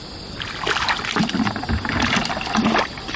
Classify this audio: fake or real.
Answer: real